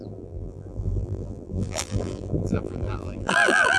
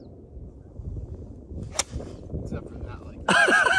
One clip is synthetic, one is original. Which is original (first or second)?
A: second